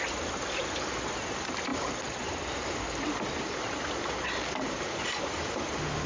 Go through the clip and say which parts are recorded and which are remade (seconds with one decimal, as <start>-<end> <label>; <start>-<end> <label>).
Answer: 0.0-6.1 recorded